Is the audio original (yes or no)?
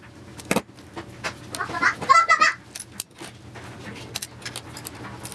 yes